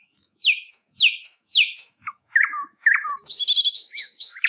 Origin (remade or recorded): remade